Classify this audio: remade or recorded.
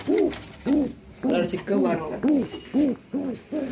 recorded